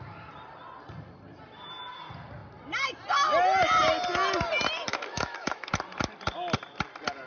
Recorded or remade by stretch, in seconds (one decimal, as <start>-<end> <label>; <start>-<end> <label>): 0.0-4.9 recorded; 4.9-5.7 remade; 5.7-7.3 recorded